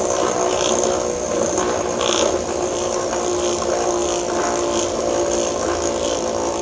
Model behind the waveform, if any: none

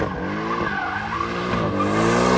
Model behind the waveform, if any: none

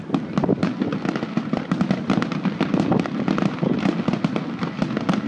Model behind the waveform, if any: none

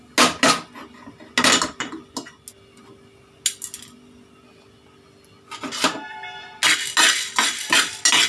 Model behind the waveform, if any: none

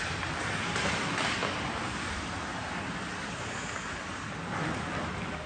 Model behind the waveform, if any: none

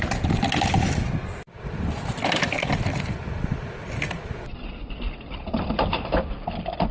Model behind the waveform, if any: none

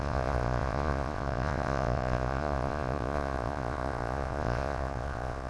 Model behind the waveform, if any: vocoder, Vocos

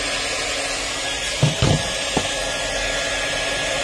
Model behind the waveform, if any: none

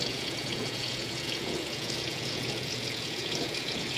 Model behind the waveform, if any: vocoder, Vocos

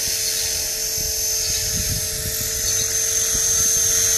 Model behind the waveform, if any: none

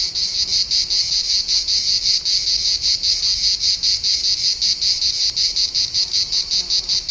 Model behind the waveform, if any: none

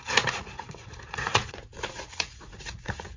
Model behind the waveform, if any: vocoder, Vocos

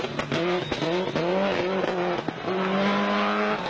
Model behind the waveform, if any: none